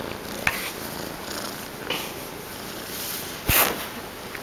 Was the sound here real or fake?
real